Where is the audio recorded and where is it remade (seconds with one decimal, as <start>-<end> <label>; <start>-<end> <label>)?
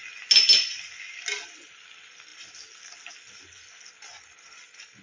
0.0-5.0 recorded